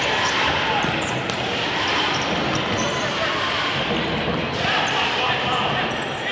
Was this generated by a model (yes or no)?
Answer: yes